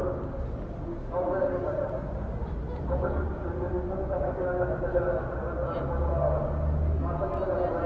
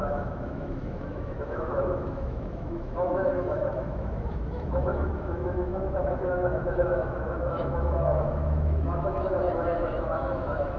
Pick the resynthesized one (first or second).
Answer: second